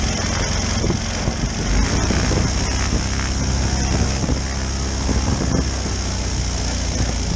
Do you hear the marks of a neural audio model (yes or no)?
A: no